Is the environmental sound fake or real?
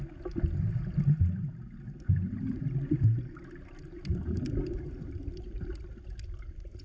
real